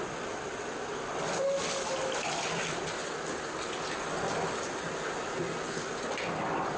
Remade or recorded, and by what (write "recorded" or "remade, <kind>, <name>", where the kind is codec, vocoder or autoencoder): recorded